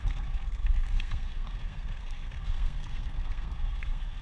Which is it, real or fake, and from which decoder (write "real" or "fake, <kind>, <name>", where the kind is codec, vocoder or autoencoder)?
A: fake, codec, SNAC